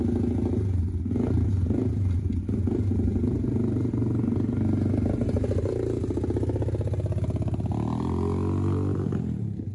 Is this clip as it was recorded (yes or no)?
yes